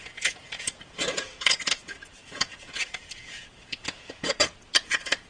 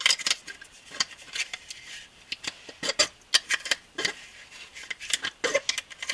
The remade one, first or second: first